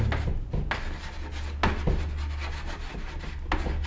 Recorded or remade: recorded